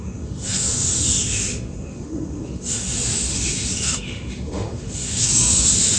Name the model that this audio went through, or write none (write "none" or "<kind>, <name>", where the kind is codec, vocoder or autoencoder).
autoencoder, DAC-VAE